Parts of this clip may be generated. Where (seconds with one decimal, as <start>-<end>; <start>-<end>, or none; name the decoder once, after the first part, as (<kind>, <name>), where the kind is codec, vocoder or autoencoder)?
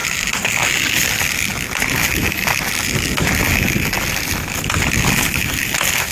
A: none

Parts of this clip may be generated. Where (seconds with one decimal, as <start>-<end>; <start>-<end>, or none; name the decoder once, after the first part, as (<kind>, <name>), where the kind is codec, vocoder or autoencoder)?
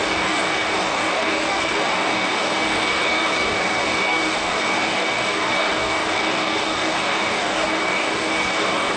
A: 0.0-9.0 (codec, DAC)